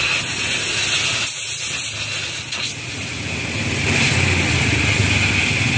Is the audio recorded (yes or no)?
yes